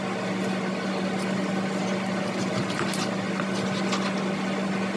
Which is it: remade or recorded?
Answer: recorded